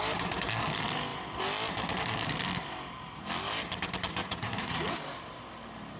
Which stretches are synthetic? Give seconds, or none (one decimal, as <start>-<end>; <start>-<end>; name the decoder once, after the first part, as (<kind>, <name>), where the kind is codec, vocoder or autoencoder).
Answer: 4.2-4.9 (vocoder, Vocos)